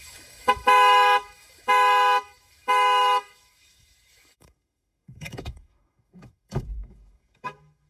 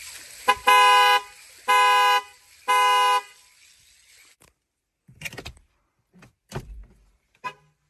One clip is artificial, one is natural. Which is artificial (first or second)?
first